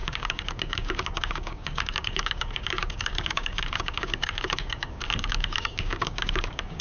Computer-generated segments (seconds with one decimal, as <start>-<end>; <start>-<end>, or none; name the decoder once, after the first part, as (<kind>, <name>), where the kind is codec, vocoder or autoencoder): 0.0-6.8 (codec, DAC)